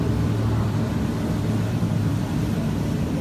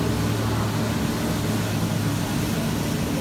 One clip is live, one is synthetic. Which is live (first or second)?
second